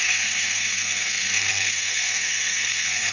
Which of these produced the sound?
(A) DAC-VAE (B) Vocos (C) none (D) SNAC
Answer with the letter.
D